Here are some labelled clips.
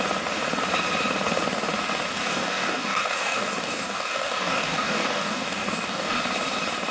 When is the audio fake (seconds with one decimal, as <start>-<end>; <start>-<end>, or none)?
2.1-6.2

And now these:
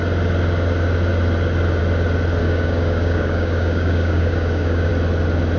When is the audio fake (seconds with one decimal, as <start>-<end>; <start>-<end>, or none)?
2.4-4.9

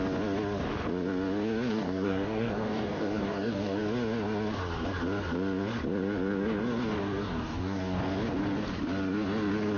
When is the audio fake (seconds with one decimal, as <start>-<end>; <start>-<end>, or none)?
1.7-3.8; 7.0-8.0

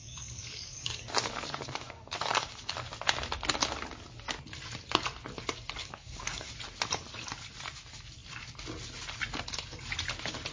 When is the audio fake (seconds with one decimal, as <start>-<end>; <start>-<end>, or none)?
0.0-2.7; 5.8-6.5

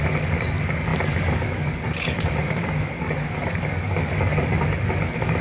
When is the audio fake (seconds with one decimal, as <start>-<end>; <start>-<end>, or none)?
0.0-5.4

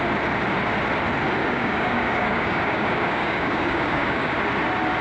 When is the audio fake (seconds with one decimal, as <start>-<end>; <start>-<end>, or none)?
1.4-4.4